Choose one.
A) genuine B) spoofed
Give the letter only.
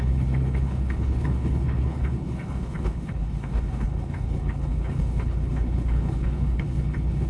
B